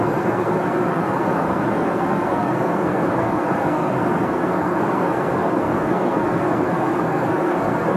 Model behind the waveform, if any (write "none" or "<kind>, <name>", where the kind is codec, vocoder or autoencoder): codec, SNAC